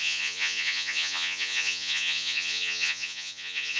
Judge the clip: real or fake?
fake